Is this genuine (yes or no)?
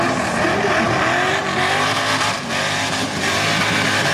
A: yes